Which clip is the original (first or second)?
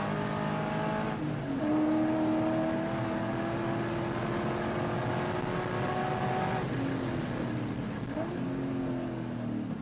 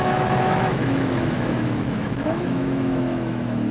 first